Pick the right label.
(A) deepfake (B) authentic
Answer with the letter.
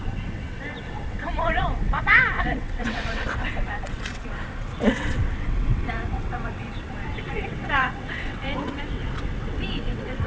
A